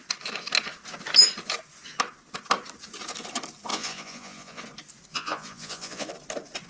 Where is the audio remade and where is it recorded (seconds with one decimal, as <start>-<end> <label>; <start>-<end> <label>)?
0.0-3.7 recorded; 3.7-4.6 remade; 4.6-5.1 recorded; 5.1-6.1 remade; 6.1-6.7 recorded